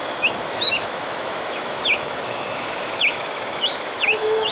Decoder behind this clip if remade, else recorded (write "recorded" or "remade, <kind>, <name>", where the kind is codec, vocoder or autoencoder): remade, autoencoder, DAC-VAE